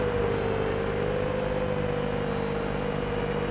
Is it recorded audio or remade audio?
recorded